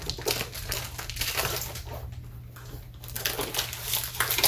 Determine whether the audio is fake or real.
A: real